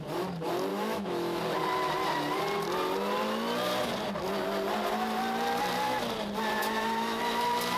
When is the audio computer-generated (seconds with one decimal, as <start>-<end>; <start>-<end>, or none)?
0.7-1.4; 6.6-7.2